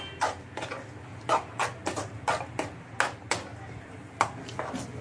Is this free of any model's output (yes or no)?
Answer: yes